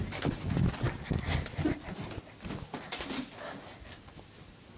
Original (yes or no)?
yes